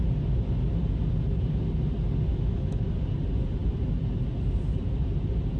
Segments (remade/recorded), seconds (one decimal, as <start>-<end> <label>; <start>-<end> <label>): 0.0-2.3 recorded; 2.3-2.9 remade; 2.9-5.6 recorded